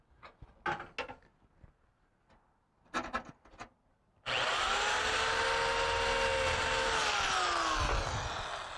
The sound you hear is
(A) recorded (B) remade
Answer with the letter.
A